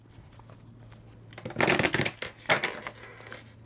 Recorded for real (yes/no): yes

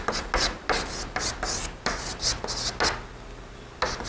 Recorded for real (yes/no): yes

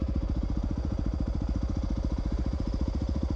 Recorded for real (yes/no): no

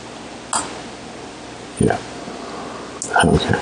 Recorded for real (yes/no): yes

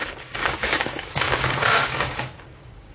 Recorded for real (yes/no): no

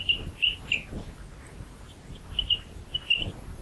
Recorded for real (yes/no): yes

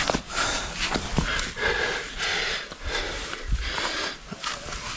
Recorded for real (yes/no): yes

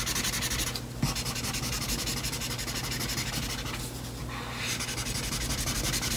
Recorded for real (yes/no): yes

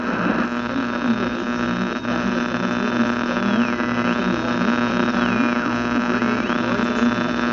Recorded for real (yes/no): yes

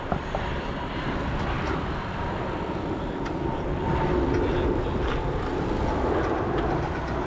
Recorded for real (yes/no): no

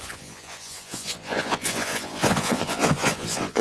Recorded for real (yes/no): no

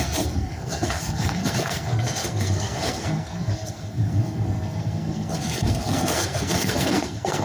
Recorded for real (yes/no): no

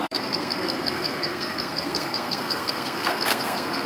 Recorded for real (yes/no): no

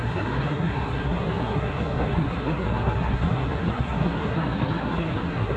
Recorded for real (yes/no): no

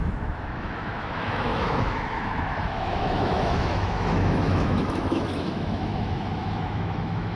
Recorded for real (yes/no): no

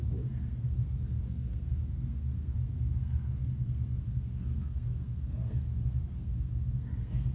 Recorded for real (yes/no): no